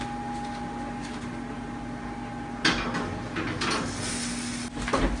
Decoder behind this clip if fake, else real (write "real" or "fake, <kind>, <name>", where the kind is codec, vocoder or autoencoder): real